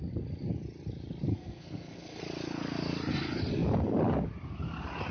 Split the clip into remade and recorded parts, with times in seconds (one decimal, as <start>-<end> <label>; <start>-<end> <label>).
0.0-1.3 recorded; 1.3-2.2 remade; 2.2-5.1 recorded